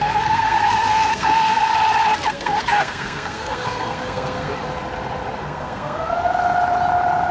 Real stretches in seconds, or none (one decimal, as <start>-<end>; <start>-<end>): 1.7-2.3; 4.5-5.4; 6.1-7.3